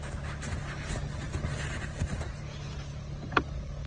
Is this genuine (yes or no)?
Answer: yes